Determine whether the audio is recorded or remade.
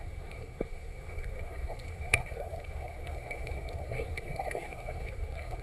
remade